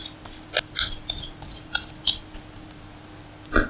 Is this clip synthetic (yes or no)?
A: no